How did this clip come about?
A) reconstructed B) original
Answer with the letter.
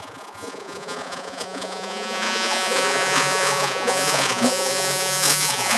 A